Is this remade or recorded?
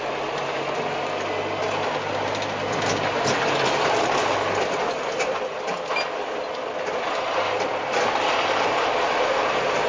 recorded